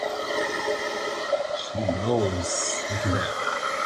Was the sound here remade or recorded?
recorded